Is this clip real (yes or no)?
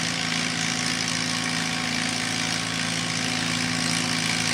yes